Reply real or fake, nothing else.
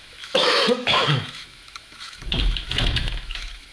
fake